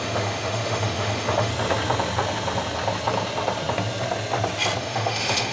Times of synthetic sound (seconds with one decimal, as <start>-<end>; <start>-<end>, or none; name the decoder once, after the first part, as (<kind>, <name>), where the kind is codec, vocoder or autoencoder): 0.0-1.5 (autoencoder, DAC-VAE); 4.8-5.5